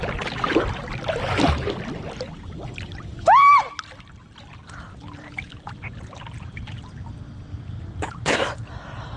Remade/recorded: recorded